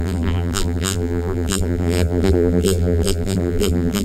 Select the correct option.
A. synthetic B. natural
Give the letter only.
A